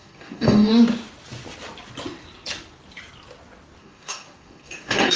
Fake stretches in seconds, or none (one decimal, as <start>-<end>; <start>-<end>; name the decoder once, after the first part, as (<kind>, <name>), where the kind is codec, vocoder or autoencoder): 0.0-0.7 (codec, DAC); 3.8-5.2